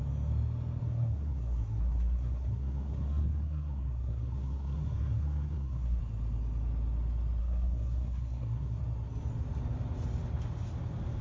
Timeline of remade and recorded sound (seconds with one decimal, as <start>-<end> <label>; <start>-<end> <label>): 0.0-0.8 recorded; 0.8-6.0 remade; 6.0-7.4 recorded; 7.4-8.8 remade; 8.8-11.2 recorded

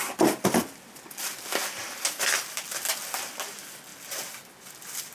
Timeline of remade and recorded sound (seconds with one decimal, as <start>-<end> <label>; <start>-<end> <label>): 0.0-5.1 recorded